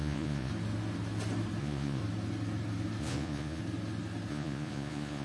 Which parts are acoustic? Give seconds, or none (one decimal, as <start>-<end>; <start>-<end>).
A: 0.5-1.6; 2.0-3.0; 3.6-4.3